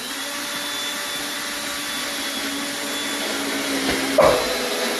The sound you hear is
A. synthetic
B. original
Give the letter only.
B